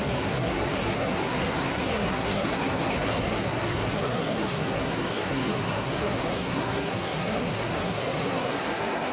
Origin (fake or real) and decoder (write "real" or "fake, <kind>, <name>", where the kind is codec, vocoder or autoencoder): fake, codec, SNAC